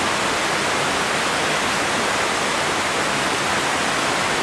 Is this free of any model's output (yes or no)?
yes